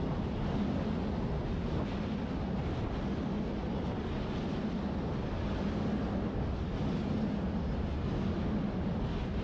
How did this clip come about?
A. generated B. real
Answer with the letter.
B